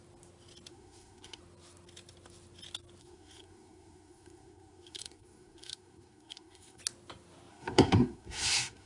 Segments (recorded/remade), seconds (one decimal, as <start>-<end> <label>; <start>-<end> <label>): 0.0-0.7 recorded; 0.7-1.4 remade; 1.4-3.0 recorded; 3.0-6.8 remade; 6.8-7.5 recorded; 7.5-8.9 remade